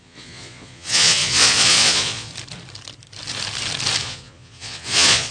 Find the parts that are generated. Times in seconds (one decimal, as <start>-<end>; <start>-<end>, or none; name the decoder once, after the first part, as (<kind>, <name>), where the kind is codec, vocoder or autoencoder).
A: 0.0-2.3 (vocoder, Vocos); 4.0-5.3